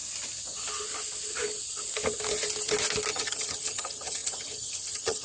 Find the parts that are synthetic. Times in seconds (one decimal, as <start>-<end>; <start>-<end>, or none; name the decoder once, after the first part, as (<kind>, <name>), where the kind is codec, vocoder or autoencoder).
3.1-5.2 (vocoder, HiFi-GAN)